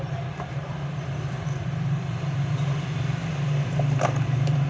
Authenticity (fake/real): fake